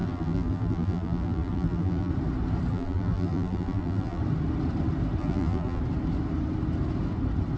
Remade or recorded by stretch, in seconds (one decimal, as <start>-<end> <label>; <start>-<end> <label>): 0.0-2.1 remade; 2.1-2.7 recorded; 2.7-4.2 remade; 4.2-5.2 recorded; 5.2-5.8 remade; 5.8-7.6 recorded